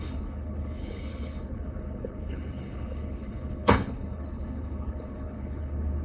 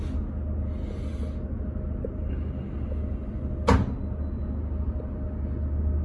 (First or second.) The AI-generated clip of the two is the first